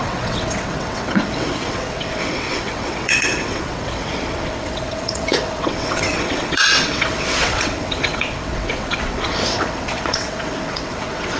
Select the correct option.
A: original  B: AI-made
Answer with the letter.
B